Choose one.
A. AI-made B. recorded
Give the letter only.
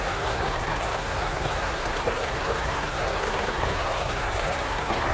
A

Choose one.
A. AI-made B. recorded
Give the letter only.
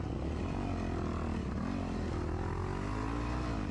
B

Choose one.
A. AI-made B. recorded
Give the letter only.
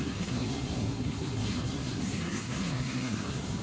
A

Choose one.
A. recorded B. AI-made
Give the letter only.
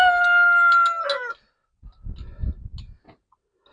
A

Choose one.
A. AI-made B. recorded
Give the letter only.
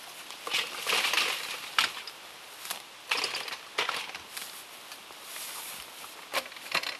B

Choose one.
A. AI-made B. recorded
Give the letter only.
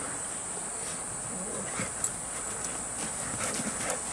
B